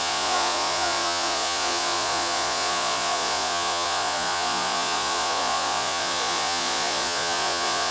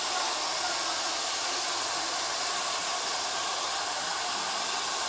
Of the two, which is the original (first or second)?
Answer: second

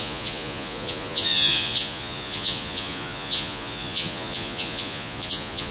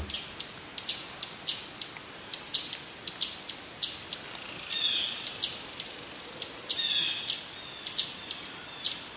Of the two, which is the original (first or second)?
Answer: second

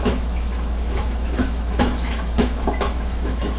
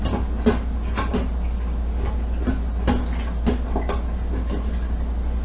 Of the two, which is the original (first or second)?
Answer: second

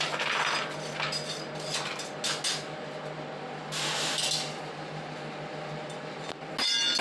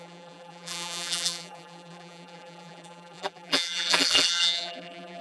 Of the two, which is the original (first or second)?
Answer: first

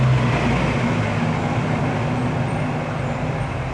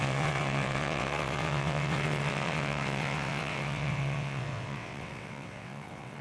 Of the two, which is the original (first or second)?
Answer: first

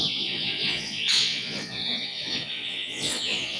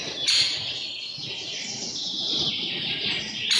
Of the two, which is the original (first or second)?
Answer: second